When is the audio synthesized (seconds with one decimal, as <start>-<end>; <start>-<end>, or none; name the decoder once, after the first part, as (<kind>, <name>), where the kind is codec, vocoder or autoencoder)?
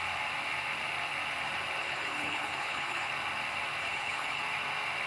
1.8-3.1 (codec, HILCodec); 3.8-4.4